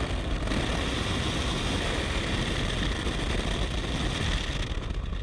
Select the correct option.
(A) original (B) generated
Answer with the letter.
A